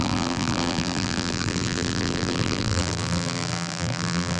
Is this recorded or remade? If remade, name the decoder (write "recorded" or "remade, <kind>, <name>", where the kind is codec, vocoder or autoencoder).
remade, vocoder, BigVGAN v2